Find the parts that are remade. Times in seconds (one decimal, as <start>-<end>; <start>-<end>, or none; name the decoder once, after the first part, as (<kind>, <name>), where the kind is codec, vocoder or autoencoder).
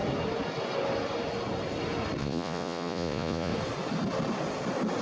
2.2-3.5 (vocoder, Vocos)